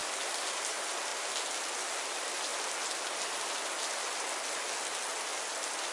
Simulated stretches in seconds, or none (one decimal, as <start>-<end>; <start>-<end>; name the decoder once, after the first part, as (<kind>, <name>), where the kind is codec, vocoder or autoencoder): none